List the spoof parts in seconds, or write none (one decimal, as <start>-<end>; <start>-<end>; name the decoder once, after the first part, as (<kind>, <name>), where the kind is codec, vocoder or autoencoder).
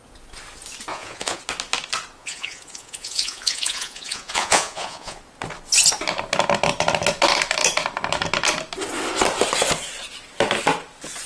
0.9-1.4 (vocoder, Vocos); 2.2-5.2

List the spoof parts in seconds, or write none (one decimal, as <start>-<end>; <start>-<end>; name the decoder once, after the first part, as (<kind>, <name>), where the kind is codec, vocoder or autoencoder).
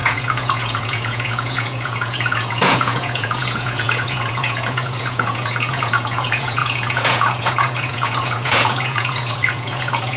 0.0-10.2 (vocoder, Vocos)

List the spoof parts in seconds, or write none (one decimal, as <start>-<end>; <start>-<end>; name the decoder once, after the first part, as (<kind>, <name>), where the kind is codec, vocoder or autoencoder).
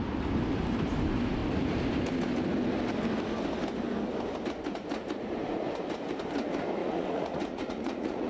6.8-8.3 (vocoder, Vocos)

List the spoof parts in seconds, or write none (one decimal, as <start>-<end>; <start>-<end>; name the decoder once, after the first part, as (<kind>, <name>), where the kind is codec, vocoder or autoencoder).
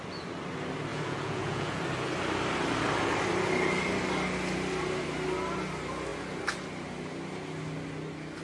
0.9-1.8 (vocoder, Vocos)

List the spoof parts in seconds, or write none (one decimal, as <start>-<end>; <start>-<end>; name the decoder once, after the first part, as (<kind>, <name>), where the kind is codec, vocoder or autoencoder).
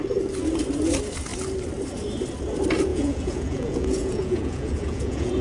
2.9-5.4 (vocoder, Vocos)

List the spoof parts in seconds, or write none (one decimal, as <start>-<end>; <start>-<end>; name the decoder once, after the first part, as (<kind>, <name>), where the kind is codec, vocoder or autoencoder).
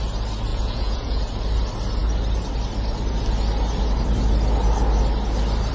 0.5-1.2 (vocoder, Vocos)